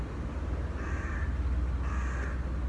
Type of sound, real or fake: real